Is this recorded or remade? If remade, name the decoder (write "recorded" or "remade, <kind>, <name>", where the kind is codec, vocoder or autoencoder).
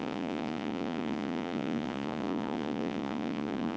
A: remade, vocoder, Vocos